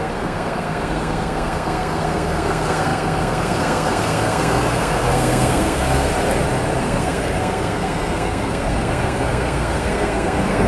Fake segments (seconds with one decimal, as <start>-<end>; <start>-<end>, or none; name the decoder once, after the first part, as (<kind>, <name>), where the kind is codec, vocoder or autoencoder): 0.0-6.1 (codec, SNAC); 6.8-10.7